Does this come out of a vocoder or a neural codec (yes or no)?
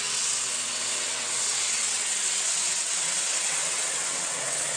yes